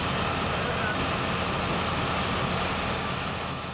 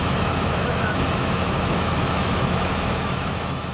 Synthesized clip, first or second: second